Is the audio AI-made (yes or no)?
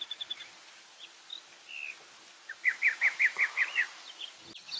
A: no